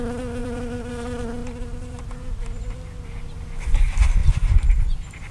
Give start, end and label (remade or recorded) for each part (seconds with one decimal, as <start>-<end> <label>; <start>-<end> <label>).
0.0-0.4 recorded; 0.4-0.9 remade; 0.9-1.4 recorded; 1.4-2.7 remade; 2.7-5.3 recorded